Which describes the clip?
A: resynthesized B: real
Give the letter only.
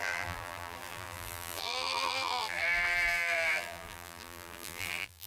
A